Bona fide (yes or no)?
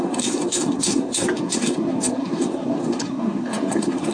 no